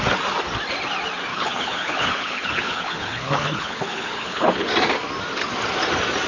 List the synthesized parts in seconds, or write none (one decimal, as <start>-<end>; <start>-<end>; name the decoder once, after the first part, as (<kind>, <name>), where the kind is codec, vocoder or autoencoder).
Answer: 1.3-4.7 (codec, HILCodec)